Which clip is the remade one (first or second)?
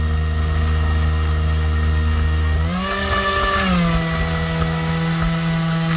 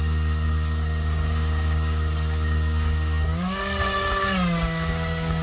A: second